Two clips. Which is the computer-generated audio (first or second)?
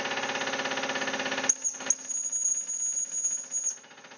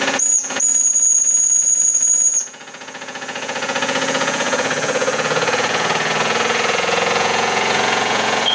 second